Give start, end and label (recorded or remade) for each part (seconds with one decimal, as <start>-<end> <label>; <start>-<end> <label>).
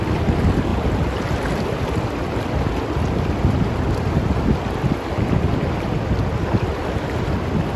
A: 0.0-7.8 recorded